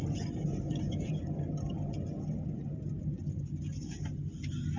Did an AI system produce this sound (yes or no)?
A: no